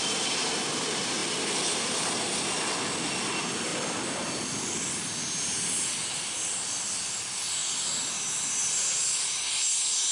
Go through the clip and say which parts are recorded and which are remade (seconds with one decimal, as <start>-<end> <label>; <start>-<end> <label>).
0.0-10.1 recorded